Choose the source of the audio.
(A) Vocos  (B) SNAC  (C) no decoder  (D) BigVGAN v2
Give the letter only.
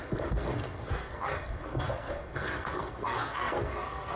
B